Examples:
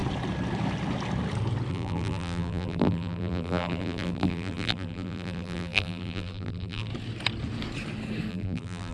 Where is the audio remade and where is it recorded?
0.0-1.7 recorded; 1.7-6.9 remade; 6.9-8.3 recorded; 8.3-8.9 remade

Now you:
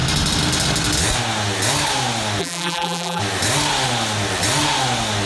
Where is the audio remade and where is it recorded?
0.0-2.4 recorded; 2.4-3.2 remade; 3.2-5.3 recorded

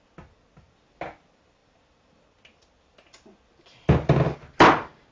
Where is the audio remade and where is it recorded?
0.0-5.1 recorded

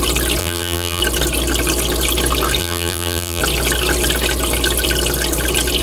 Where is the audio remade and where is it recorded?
0.0-0.4 recorded; 0.4-1.0 remade; 1.0-2.6 recorded; 2.6-3.4 remade; 3.4-5.8 recorded

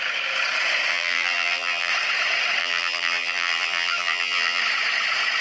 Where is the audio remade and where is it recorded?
0.0-0.9 recorded; 0.9-1.9 remade; 1.9-2.6 recorded; 2.6-4.6 remade; 4.6-5.4 recorded